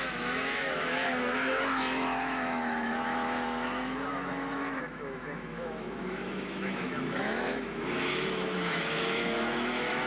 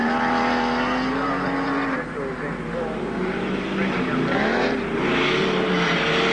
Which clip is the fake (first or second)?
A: first